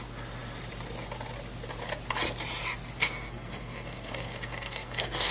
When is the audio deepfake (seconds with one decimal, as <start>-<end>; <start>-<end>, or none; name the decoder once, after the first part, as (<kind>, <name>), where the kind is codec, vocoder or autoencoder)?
3.0-5.3 (codec, SNAC)